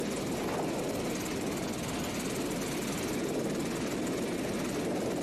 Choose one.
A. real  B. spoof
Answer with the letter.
A